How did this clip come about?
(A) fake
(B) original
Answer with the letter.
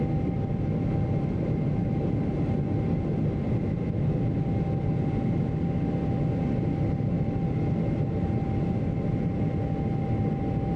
B